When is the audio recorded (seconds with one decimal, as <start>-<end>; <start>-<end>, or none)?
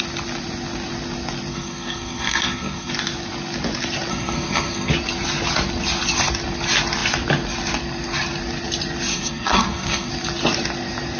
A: 0.0-1.5; 2.9-4.1; 4.9-9.1; 10.1-11.2